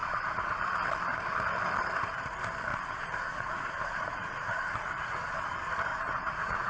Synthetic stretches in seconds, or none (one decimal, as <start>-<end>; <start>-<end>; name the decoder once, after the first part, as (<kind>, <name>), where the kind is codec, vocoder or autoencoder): 0.0-0.6 (vocoder, Vocos); 2.7-5.4; 5.9-6.7